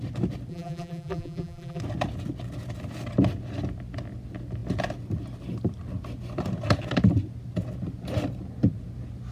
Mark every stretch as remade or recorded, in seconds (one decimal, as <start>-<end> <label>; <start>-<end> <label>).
0.0-0.5 recorded; 0.5-1.8 remade; 1.8-9.3 recorded